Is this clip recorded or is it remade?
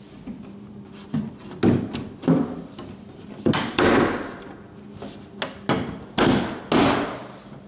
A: recorded